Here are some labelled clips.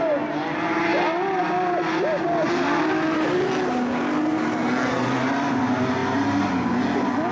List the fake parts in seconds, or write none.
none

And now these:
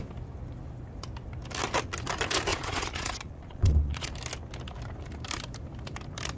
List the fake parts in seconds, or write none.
2.5-4.1

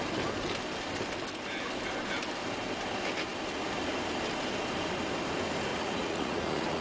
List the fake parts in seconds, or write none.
5.7-6.8

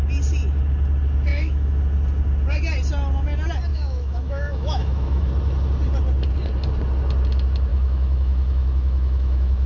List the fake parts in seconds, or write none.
1.3-1.8; 3.7-5.3; 7.7-9.7

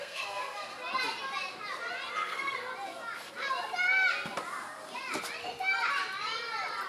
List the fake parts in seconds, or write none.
0.0-0.7; 2.1-2.7

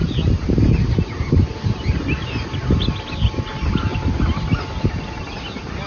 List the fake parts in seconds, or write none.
none

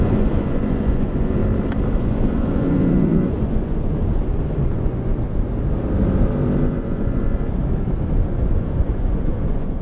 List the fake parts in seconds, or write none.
0.0-1.4; 2.0-4.0; 4.6-5.1; 6.6-7.6; 8.3-9.8

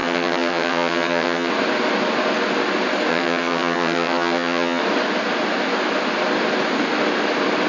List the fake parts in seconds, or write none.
0.0-1.5; 3.1-4.8